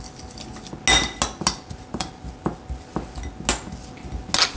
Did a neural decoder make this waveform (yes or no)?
no